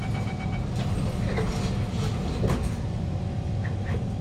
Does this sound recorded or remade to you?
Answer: recorded